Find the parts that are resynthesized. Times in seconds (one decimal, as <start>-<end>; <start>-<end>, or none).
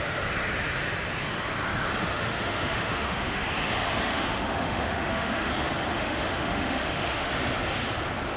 2.1-3.4; 4.1-5.5; 5.9-7.3